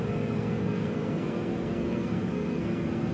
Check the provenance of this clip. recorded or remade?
remade